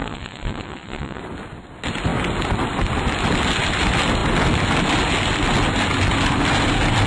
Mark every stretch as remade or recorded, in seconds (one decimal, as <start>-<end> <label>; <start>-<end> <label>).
0.0-1.2 remade; 1.2-7.1 recorded